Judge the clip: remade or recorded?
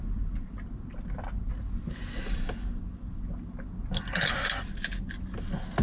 recorded